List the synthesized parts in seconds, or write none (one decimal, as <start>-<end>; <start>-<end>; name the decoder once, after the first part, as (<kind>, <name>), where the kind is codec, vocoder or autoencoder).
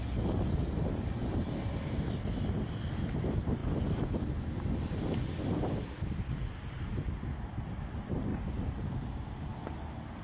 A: none